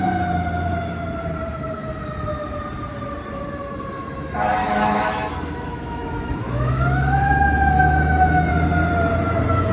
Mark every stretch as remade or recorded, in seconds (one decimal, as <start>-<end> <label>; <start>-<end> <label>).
0.0-4.6 recorded; 4.6-8.5 remade; 8.5-9.7 recorded